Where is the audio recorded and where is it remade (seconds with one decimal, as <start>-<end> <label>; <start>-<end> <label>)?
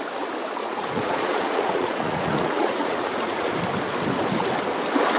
0.0-0.6 recorded; 0.6-3.5 remade; 3.5-5.2 recorded